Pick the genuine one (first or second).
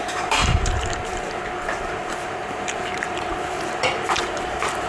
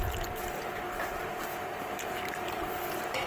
second